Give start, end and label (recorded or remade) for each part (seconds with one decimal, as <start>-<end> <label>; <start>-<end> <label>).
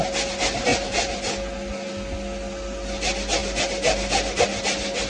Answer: 0.0-5.1 recorded